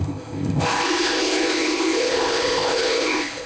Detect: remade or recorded remade